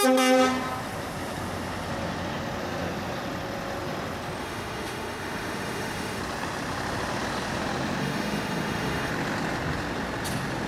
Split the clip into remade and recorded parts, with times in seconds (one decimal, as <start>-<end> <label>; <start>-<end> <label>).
0.0-4.4 recorded; 4.4-6.2 remade; 6.2-8.0 recorded; 8.0-9.1 remade; 9.1-10.7 recorded